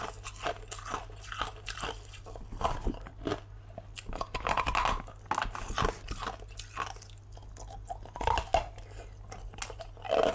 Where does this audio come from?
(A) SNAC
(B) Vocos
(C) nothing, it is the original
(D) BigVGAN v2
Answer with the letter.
C